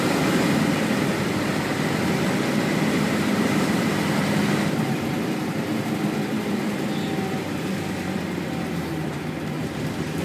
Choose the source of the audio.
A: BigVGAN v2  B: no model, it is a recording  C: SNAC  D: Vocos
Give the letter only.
A